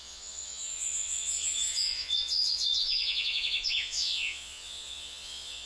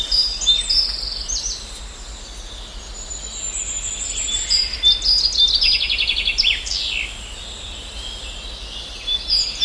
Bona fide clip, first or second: second